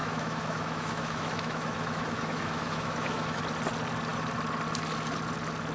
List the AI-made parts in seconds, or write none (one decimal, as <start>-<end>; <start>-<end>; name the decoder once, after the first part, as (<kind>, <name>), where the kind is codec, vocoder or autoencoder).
0.0-3.4 (autoencoder, DAC-VAE)

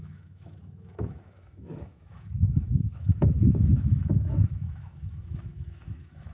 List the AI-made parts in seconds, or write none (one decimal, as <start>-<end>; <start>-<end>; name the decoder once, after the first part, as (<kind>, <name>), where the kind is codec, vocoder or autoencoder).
0.0-6.3 (autoencoder, DAC-VAE)

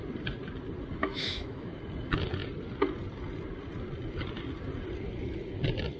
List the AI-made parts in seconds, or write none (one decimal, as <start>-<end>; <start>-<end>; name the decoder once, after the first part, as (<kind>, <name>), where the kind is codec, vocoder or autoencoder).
1.0-1.8 (autoencoder, DAC-VAE)

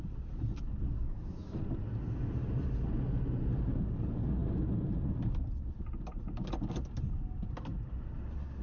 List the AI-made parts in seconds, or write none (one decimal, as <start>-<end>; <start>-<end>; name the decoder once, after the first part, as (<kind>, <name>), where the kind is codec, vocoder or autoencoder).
1.0-1.6 (autoencoder, DAC-VAE)

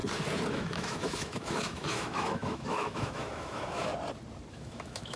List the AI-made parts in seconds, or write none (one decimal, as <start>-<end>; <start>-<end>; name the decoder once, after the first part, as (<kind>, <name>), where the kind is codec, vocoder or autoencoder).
0.5-3.9 (autoencoder, DAC-VAE); 4.5-5.2

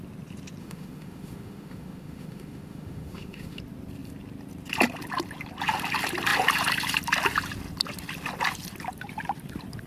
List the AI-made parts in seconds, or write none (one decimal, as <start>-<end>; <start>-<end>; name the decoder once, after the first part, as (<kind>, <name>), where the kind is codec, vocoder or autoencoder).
0.6-3.6 (autoencoder, DAC-VAE)

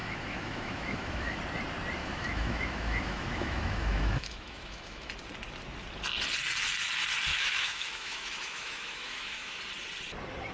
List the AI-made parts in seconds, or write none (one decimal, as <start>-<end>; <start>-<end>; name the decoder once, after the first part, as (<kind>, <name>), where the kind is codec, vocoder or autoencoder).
0.0-1.4 (autoencoder, DAC-VAE); 2.0-5.1; 7.3-9.6

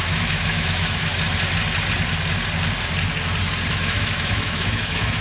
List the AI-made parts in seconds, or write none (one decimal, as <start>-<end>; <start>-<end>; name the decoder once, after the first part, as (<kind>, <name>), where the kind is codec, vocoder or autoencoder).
0.0-1.1 (autoencoder, DAC-VAE); 3.7-5.2